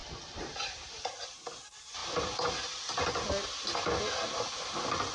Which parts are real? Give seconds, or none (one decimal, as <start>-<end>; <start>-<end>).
1.0-5.1